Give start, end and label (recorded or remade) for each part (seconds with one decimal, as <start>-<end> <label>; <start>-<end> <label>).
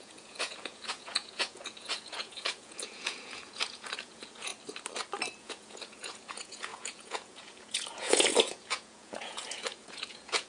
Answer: 0.0-4.5 remade; 4.5-5.4 recorded; 5.4-10.5 remade